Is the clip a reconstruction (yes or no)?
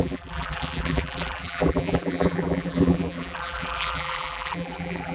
yes